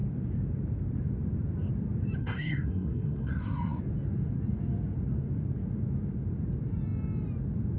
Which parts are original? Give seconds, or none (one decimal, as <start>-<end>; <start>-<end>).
0.0-2.2; 3.8-7.8